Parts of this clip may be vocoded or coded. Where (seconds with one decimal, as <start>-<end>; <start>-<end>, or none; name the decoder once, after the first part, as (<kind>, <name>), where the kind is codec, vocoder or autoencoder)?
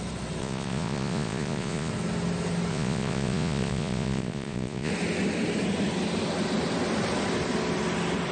0.4-1.9 (vocoder, Vocos); 2.7-4.9